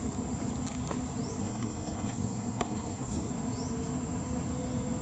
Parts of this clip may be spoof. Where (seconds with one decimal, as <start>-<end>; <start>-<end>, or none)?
1.4-3.3